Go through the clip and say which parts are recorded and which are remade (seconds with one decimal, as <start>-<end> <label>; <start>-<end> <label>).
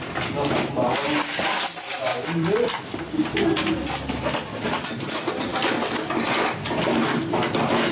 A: 0.0-2.1 recorded; 2.1-3.0 remade; 3.0-7.9 recorded